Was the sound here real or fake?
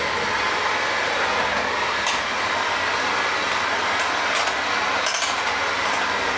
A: real